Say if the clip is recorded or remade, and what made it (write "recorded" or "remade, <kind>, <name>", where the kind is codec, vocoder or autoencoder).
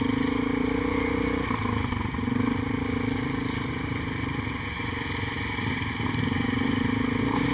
recorded